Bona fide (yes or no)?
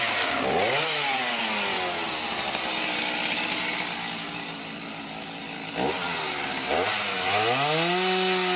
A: yes